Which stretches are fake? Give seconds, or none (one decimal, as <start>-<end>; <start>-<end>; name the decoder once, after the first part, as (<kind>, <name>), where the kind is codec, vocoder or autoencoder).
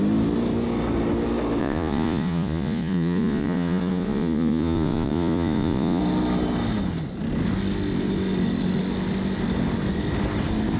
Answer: 1.6-6.0 (vocoder, Vocos)